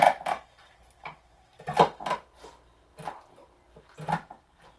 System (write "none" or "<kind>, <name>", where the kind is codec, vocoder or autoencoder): none